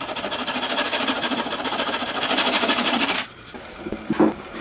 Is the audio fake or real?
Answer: fake